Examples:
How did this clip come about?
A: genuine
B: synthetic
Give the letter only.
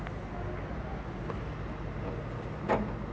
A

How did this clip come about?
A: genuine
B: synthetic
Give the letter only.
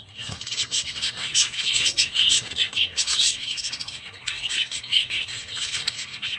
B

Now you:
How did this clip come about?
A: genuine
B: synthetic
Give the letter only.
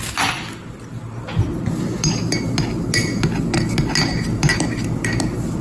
A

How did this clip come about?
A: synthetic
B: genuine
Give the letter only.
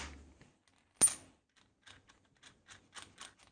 B